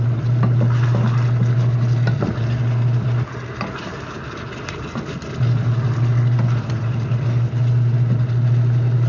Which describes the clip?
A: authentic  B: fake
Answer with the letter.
A